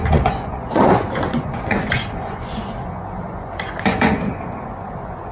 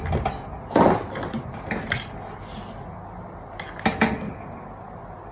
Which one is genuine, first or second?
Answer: second